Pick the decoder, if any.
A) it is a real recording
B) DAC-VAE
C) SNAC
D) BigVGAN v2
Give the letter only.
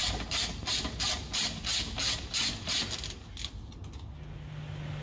A